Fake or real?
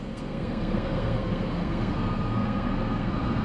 fake